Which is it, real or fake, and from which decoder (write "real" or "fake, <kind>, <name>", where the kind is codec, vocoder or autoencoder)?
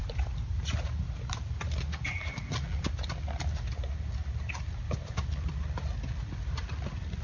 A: real